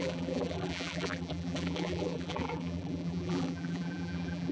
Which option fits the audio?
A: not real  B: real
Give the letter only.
A